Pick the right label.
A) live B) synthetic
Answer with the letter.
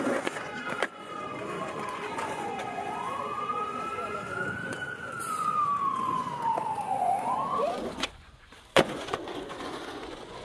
B